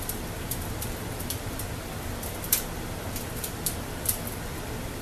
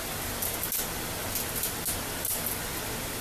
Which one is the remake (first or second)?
first